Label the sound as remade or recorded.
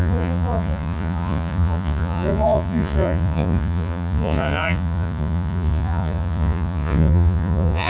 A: remade